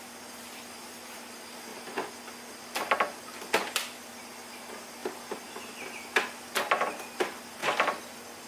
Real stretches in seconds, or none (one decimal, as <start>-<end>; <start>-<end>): 0.0-8.5